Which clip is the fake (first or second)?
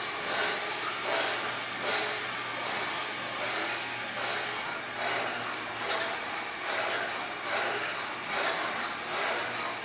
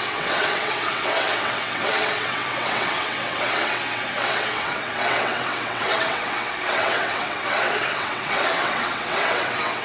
second